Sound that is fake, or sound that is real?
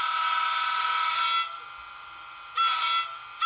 real